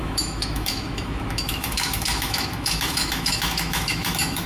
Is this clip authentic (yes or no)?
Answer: no